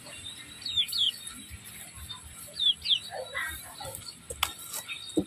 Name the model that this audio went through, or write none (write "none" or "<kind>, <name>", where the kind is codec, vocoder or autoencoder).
none